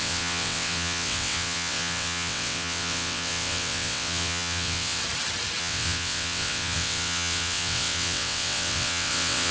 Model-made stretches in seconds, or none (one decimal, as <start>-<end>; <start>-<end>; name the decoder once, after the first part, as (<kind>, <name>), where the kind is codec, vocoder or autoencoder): 0.0-5.0 (vocoder, WaveNeXt); 5.6-9.5